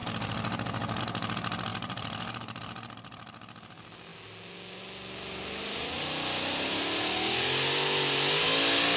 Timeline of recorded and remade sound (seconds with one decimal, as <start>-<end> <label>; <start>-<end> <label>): 0.0-1.7 recorded; 1.7-2.6 remade; 2.6-9.0 recorded